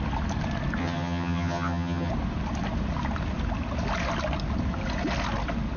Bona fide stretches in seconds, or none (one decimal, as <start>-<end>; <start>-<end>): 0.0-0.8; 2.1-5.8